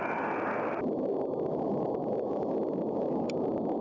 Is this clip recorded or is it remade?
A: recorded